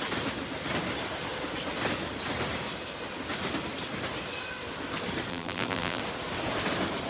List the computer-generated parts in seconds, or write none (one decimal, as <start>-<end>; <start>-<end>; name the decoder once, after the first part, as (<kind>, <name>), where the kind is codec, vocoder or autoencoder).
5.3-6.0 (vocoder, BigVGAN v2)